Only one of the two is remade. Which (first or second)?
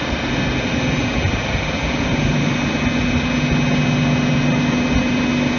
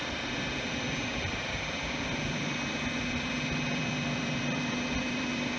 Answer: second